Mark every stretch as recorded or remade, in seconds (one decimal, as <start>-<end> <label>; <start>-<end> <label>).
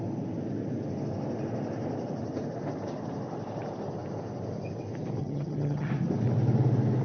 0.0-5.2 recorded; 5.2-5.9 remade; 5.9-7.0 recorded